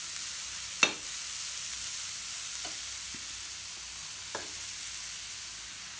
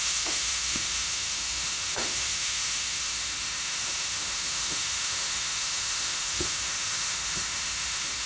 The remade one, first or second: second